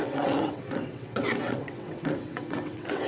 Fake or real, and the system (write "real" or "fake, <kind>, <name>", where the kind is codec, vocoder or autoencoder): fake, vocoder, WaveNeXt